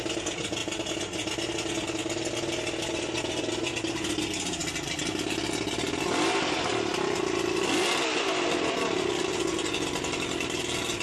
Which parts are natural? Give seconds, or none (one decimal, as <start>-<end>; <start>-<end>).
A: 0.0-11.0